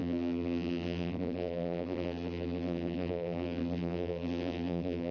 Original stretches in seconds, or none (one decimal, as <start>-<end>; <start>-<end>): none